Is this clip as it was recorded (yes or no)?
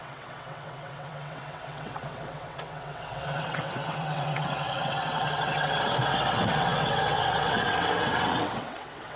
no